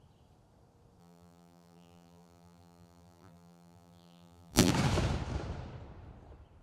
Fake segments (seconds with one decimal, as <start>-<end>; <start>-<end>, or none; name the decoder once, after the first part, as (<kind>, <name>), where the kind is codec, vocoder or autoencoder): 1.0-4.7 (vocoder, BigVGAN v2)